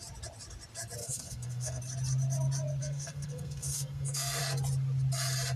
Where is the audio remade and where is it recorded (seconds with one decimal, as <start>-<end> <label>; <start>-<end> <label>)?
0.0-1.0 recorded; 1.0-1.8 remade; 1.8-2.8 recorded; 2.8-4.4 remade; 4.4-5.6 recorded